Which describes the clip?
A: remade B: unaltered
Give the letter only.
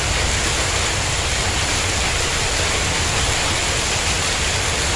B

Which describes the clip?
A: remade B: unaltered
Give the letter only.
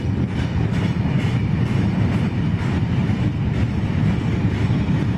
B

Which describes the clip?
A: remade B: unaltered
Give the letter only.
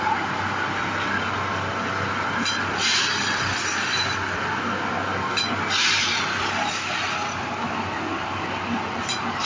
B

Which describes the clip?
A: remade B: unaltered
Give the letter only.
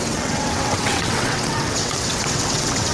A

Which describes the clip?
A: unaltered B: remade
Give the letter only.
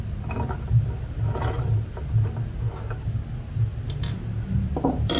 A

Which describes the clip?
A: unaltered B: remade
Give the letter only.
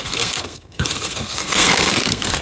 B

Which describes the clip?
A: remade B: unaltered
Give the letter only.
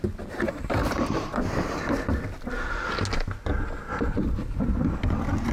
B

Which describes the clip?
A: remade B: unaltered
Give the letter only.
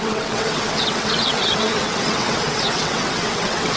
A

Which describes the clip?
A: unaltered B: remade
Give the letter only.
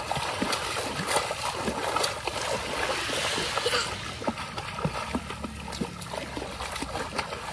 A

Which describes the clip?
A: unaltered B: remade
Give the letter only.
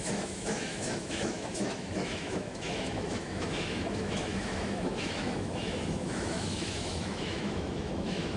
B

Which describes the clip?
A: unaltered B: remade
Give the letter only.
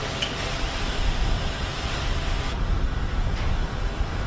A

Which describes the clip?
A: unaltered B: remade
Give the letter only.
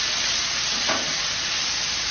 A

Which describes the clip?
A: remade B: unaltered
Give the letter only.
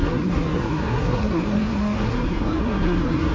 A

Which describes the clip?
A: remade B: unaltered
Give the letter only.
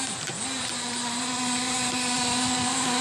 B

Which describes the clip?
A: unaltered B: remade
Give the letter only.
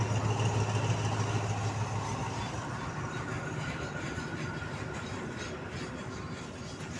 A